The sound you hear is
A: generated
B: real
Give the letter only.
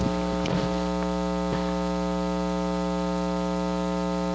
B